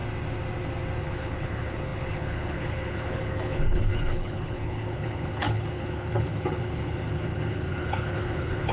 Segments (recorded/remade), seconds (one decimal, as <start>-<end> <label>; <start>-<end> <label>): 0.0-1.0 recorded; 1.0-8.7 remade